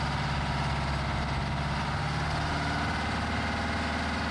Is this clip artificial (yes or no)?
no